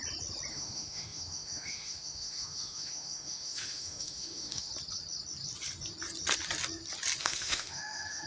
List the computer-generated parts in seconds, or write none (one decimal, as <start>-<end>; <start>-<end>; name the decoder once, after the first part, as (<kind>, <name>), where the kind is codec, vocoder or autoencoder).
0.5-4.7 (autoencoder, DAC-VAE); 7.2-8.3